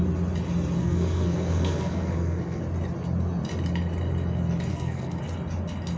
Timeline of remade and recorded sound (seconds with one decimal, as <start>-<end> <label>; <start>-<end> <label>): 0.0-0.8 recorded; 0.8-2.6 remade; 2.6-4.7 recorded; 4.7-5.2 remade; 5.2-6.0 recorded